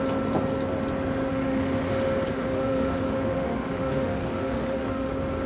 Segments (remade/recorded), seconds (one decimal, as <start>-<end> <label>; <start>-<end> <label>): 0.0-1.3 recorded; 1.3-1.9 remade; 1.9-2.3 recorded; 2.3-5.1 remade; 5.1-5.5 recorded